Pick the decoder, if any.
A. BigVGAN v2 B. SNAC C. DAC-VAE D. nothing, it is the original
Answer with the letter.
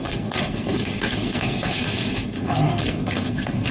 B